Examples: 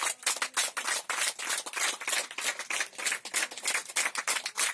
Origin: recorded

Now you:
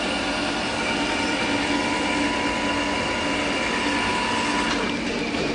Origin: recorded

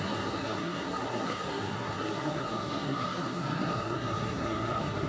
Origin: remade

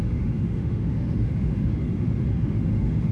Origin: remade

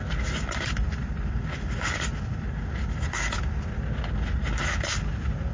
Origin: recorded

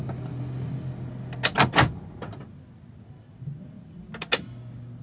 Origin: recorded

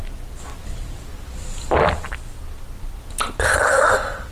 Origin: recorded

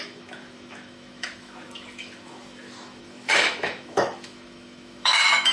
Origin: remade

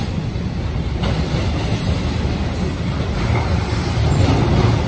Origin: recorded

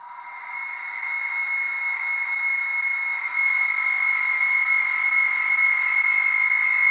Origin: recorded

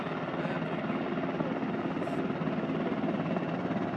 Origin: recorded